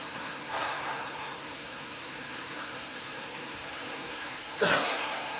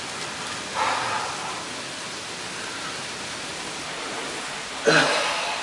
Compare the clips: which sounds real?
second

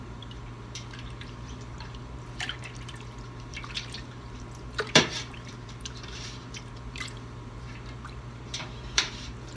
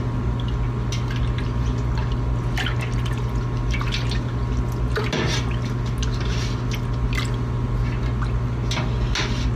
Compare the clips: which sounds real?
second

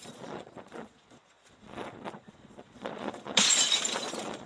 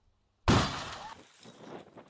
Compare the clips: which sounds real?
second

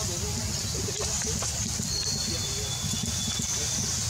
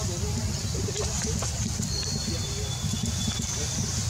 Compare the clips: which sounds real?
first